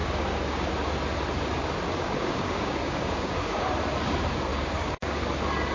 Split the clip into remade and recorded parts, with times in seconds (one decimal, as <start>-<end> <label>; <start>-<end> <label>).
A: 0.0-0.7 remade; 0.7-1.9 recorded; 1.9-3.7 remade; 3.7-4.5 recorded; 4.5-5.2 remade; 5.2-5.7 recorded

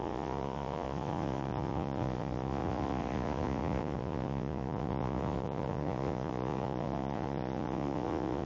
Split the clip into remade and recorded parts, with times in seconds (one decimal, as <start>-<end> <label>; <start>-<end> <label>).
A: 0.0-8.5 remade

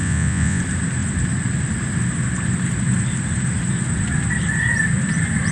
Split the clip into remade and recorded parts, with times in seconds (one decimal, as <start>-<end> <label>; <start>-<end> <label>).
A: 0.0-0.6 remade; 0.6-5.5 recorded

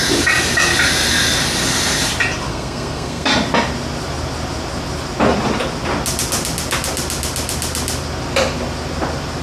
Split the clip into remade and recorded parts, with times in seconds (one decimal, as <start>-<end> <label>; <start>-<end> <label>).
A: 0.0-2.5 recorded; 2.5-3.3 remade; 3.3-9.4 recorded

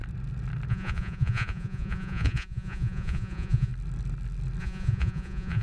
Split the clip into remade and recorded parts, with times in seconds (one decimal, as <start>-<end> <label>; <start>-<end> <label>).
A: 0.0-0.7 recorded; 0.7-3.7 remade; 3.7-4.6 recorded; 4.6-5.6 remade

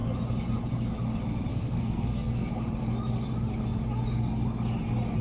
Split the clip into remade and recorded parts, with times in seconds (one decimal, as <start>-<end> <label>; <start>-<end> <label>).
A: 0.0-1.5 recorded; 1.5-2.5 remade; 2.5-5.2 recorded